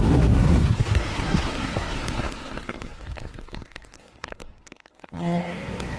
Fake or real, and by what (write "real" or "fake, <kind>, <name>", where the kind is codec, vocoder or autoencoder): fake, codec, SNAC